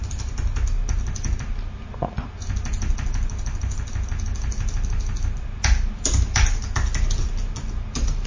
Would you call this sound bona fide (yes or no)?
yes